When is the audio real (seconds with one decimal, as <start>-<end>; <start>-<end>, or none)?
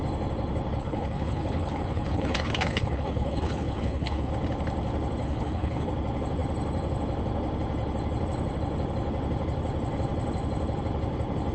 0.0-0.8; 4.3-5.2; 5.9-11.5